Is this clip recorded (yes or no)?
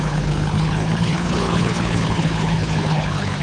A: no